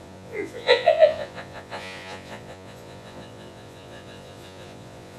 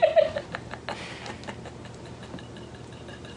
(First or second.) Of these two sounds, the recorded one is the second